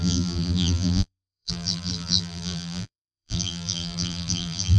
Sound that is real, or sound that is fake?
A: fake